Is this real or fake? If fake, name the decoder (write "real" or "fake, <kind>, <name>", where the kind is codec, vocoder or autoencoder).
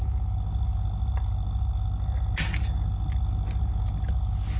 real